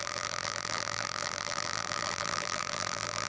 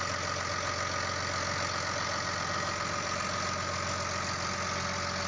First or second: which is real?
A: second